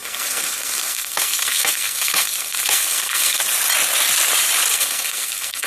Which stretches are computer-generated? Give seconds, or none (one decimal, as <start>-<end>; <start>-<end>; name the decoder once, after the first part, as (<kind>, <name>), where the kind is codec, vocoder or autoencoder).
0.0-3.4 (codec, SNAC); 4.7-5.7